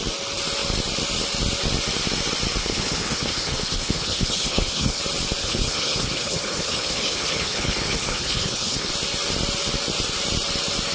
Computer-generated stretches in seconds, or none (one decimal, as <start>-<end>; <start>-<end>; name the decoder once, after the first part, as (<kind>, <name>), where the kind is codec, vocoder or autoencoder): 2.6-5.0 (codec, HILCodec); 5.4-8.9